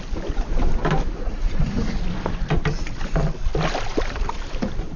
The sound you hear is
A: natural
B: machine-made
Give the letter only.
B